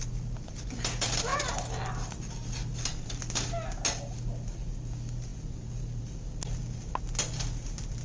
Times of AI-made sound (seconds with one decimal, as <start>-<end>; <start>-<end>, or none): none